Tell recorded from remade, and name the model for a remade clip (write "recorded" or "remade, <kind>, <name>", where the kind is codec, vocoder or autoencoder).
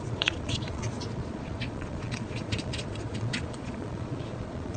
remade, vocoder, Vocos